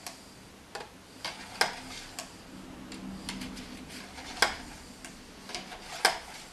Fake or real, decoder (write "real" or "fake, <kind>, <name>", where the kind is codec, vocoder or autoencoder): real